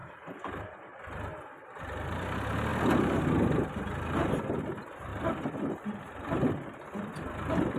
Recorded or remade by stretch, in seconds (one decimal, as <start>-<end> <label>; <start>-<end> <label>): 0.0-0.9 remade; 0.9-2.7 recorded; 2.7-3.2 remade; 3.2-7.8 recorded